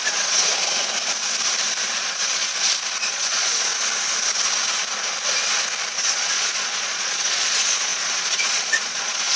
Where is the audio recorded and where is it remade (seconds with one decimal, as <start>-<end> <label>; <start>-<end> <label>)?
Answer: 0.0-0.5 remade; 0.5-2.0 recorded; 2.0-2.5 remade; 2.5-3.1 recorded; 3.1-3.7 remade; 3.7-5.9 recorded; 5.9-9.4 remade